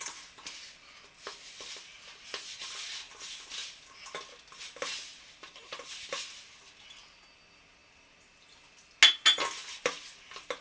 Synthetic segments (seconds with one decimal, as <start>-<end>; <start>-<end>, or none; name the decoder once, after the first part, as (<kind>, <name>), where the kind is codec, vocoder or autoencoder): none

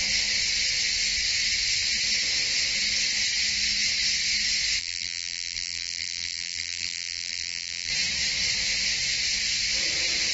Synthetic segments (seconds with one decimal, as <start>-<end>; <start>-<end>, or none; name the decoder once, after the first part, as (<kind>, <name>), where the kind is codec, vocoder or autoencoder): 4.8-7.9 (vocoder, BigVGAN v2)